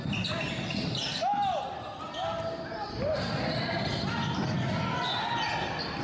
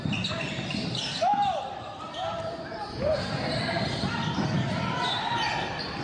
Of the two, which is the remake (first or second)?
second